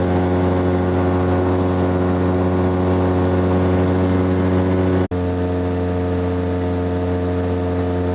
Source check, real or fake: real